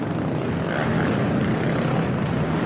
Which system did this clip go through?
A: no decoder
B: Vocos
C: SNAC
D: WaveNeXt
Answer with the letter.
A